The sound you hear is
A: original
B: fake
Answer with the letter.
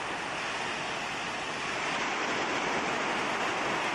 A